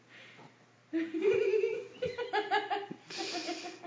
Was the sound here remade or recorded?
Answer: recorded